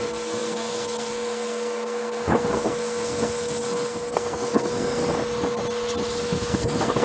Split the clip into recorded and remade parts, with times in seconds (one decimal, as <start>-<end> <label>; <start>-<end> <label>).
0.0-5.0 remade; 5.0-6.2 recorded; 6.2-7.0 remade